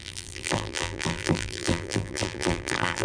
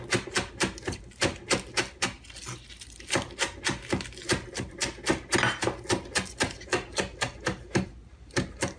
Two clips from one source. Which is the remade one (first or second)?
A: first